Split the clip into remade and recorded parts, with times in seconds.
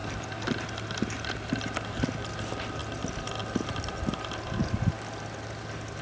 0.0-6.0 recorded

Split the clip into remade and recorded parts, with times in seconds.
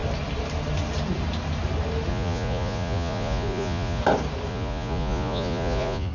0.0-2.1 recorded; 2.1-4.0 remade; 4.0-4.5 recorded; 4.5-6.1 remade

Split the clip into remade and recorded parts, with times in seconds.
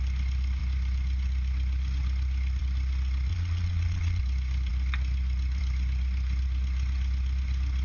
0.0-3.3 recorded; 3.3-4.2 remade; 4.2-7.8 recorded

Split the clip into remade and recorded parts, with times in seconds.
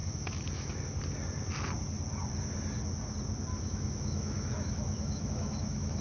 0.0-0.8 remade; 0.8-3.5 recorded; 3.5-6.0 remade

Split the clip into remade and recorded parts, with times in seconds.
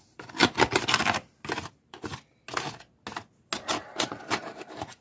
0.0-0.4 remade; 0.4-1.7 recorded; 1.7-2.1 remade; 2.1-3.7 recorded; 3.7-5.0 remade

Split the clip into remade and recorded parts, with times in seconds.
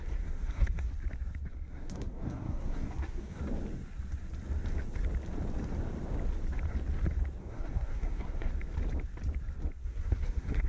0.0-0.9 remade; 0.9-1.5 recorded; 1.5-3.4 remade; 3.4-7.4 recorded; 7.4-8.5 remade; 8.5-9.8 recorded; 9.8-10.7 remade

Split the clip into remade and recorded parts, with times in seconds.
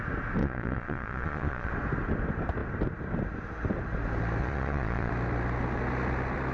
0.0-0.4 recorded; 0.4-1.7 remade; 1.7-4.4 recorded; 4.4-5.1 remade; 5.1-6.5 recorded